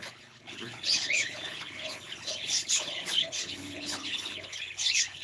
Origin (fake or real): fake